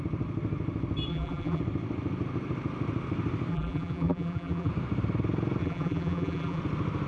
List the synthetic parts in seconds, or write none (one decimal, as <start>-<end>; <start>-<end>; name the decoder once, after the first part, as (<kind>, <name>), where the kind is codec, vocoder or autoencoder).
1.1-1.6 (vocoder, BigVGAN v2); 3.5-4.7; 5.6-6.6